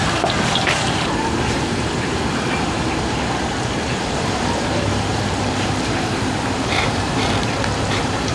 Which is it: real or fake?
fake